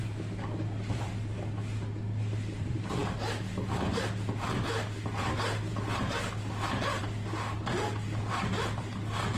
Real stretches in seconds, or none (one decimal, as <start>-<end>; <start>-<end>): 0.0-9.4